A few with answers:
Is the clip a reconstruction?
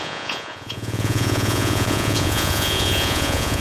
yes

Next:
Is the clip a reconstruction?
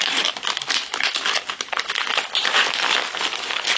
no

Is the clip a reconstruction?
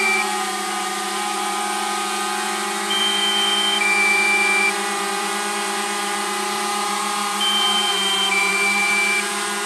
yes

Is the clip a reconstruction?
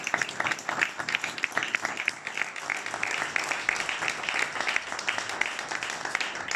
no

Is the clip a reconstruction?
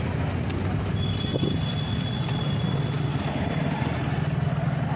no